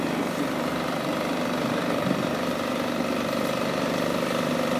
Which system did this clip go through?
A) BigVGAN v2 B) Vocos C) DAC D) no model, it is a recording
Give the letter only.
A